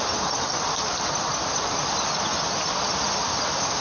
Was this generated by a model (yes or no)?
no